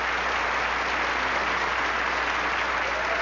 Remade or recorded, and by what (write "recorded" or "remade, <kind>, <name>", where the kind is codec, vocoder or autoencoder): recorded